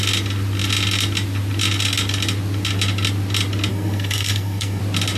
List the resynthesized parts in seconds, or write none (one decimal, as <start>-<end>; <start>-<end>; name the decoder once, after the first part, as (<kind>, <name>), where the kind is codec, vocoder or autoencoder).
3.7-4.8 (codec, SNAC)